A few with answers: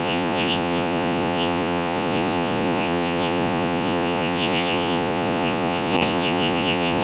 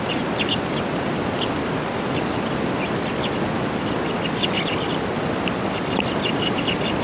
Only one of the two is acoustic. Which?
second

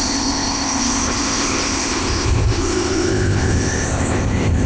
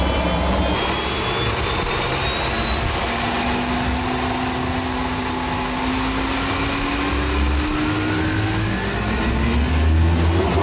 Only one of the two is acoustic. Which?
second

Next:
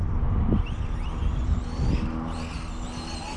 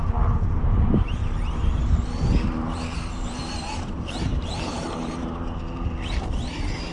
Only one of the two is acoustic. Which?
first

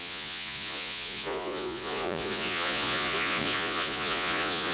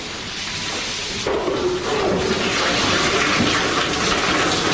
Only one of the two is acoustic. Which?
second